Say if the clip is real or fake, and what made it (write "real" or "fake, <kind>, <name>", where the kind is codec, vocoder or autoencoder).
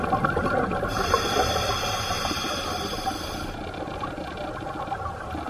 real